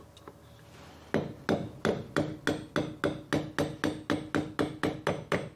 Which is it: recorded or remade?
recorded